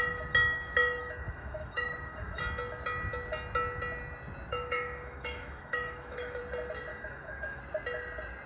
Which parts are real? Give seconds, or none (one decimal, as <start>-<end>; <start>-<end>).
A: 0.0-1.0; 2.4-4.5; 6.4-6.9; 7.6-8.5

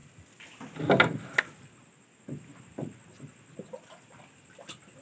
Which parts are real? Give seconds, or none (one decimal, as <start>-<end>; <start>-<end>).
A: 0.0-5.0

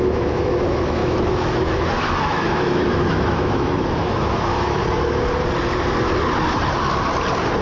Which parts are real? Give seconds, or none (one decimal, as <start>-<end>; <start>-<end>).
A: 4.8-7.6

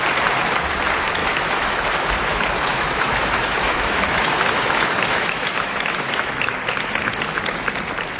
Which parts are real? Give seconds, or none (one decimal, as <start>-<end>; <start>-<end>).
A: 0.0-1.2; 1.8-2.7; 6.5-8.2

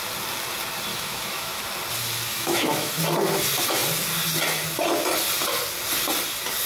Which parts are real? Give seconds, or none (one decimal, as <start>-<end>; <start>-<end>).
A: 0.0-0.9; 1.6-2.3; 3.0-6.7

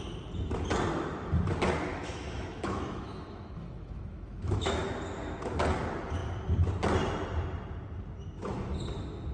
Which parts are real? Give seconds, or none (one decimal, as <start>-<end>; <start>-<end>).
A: 0.0-1.9; 4.8-9.3

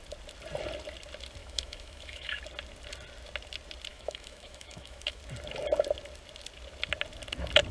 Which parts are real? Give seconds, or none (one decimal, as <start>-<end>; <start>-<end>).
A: 0.0-1.4; 2.4-3.9; 5.2-7.7